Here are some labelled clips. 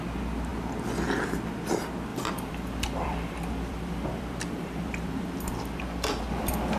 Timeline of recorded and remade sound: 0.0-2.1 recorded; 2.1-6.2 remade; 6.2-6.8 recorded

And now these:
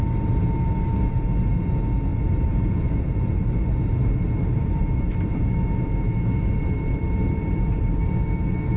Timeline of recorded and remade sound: 0.0-2.1 recorded; 2.1-3.9 remade; 3.9-4.6 recorded; 4.6-8.1 remade; 8.1-8.8 recorded

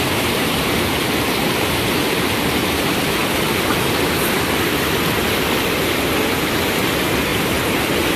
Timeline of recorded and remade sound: 0.0-3.2 remade; 3.2-6.8 recorded; 6.8-7.3 remade; 7.3-8.2 recorded